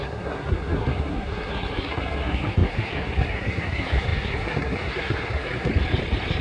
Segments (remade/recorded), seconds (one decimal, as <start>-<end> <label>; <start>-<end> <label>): 0.0-5.7 remade; 5.7-6.4 recorded